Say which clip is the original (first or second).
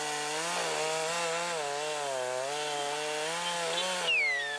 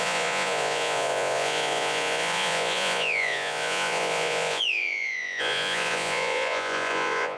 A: first